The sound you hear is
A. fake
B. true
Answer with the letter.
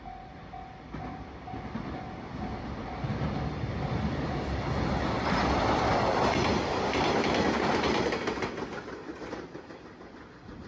B